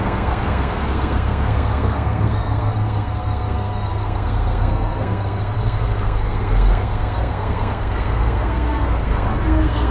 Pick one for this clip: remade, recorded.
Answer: remade